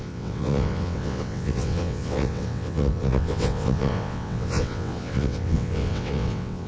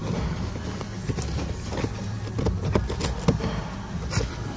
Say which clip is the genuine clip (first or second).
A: second